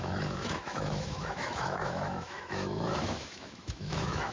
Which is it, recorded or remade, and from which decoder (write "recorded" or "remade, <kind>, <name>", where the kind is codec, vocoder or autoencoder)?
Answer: remade, autoencoder, DAC-VAE